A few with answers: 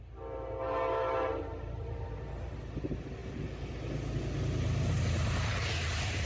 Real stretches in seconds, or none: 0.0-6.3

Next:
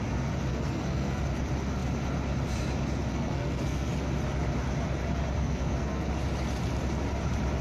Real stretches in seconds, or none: 0.0-0.5; 1.2-3.1; 3.9-5.4; 6.1-7.6

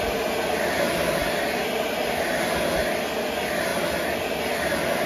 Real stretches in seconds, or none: 0.0-5.1

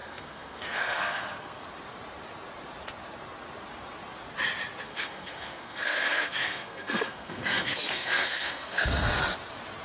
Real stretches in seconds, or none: 1.6-4.9; 9.2-9.8

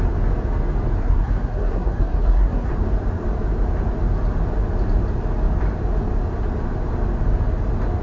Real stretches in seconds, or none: 0.0-1.0; 2.7-8.0